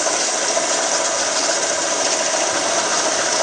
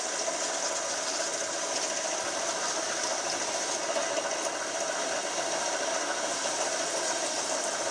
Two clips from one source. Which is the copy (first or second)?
first